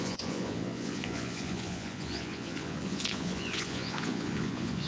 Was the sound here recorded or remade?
remade